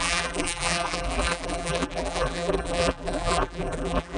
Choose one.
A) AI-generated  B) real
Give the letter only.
A